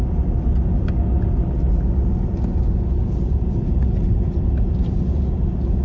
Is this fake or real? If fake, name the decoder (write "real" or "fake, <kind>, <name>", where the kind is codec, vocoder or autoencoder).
real